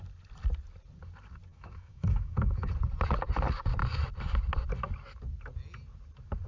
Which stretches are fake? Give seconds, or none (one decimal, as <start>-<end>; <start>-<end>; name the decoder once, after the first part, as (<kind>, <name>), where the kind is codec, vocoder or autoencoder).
1.5-2.7 (autoencoder, DAC-VAE)